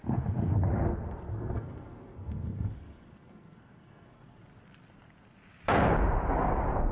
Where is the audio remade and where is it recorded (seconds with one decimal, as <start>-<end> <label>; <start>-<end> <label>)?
0.0-1.3 recorded; 1.3-4.4 remade; 4.4-6.9 recorded